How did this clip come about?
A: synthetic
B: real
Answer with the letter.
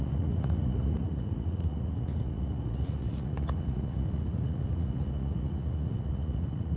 A